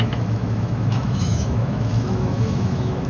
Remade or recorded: remade